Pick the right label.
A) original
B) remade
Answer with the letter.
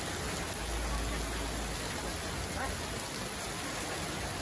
A